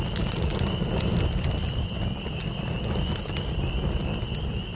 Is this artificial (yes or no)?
no